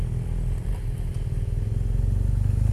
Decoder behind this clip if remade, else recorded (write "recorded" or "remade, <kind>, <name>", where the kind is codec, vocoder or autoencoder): recorded